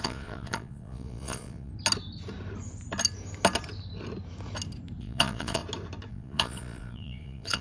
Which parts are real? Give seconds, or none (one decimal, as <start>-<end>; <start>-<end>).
1.7-5.0; 5.6-6.1